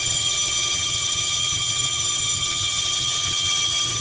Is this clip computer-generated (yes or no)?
yes